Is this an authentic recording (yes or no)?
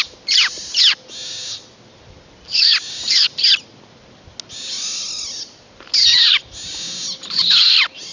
yes